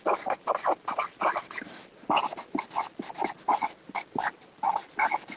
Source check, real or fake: real